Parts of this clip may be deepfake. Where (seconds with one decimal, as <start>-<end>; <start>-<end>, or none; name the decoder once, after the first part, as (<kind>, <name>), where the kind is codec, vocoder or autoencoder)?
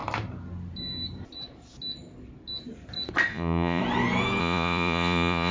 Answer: 3.3-3.8 (vocoder, Vocos); 4.4-5.5